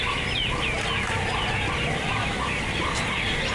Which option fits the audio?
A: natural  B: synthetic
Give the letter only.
A